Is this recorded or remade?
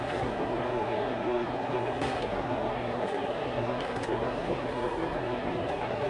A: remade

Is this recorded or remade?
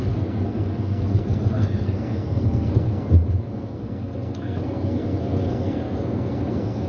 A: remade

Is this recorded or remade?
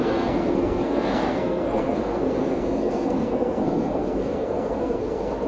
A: remade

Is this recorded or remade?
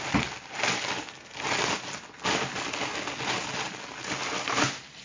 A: recorded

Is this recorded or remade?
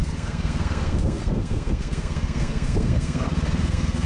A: remade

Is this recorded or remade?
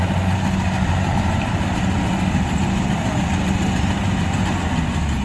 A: recorded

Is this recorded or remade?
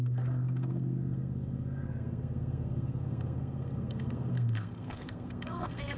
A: remade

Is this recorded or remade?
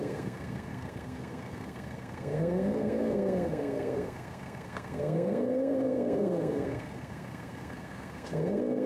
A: remade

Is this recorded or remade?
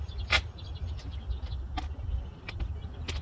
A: recorded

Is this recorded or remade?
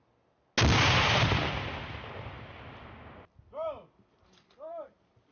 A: recorded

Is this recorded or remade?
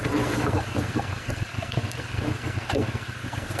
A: remade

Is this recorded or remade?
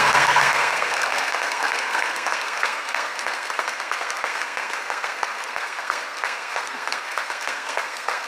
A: remade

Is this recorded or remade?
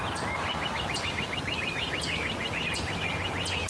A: recorded